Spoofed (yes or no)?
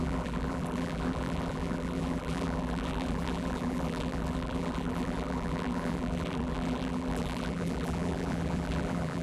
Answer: yes